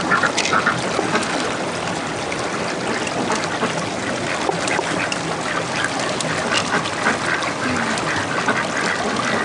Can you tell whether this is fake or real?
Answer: real